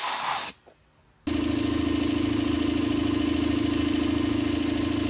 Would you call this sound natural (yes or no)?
yes